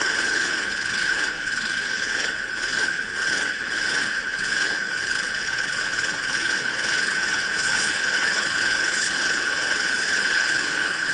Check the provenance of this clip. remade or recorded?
remade